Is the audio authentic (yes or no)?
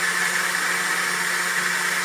yes